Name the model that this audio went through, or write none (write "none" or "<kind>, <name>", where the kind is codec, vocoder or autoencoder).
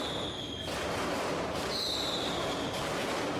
vocoder, BigVGAN v2